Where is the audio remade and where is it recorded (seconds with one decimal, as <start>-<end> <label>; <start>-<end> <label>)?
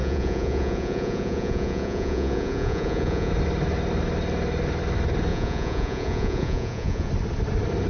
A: 0.0-3.3 remade; 3.3-5.3 recorded; 5.3-7.1 remade; 7.1-7.9 recorded